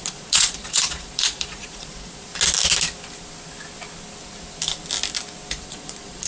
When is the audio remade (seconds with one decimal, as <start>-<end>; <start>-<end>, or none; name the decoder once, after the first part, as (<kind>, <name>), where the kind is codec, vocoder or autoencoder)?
0.0-2.3 (vocoder, Vocos); 5.5-6.3